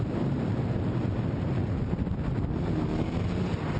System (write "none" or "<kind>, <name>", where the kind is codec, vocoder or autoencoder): none